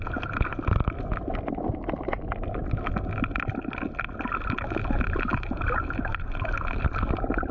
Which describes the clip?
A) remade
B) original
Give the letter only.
B